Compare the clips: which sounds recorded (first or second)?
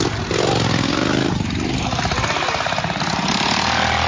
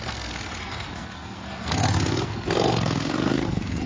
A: first